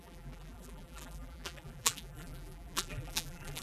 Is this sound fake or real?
fake